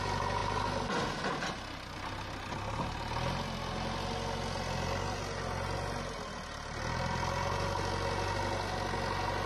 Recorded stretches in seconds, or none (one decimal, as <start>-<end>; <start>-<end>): 0.0-9.5